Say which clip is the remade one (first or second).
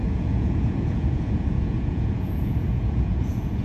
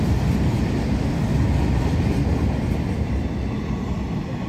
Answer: first